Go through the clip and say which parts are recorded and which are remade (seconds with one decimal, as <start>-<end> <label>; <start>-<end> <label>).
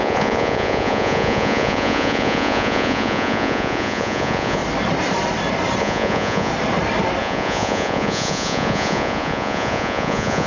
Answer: 0.0-4.6 remade; 4.6-5.8 recorded; 5.8-6.5 remade; 6.5-7.2 recorded; 7.2-10.5 remade